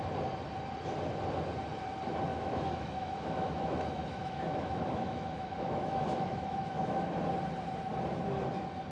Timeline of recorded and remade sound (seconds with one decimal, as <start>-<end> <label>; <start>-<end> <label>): 0.0-2.3 recorded; 2.3-7.2 remade; 7.2-8.9 recorded